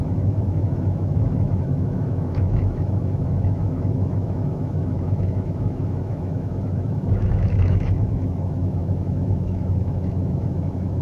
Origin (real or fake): fake